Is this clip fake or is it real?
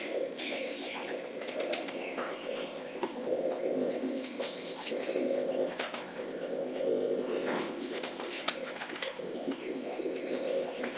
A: fake